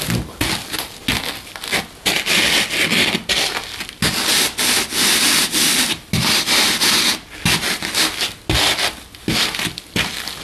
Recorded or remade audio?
recorded